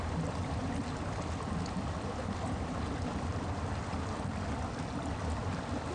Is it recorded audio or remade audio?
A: recorded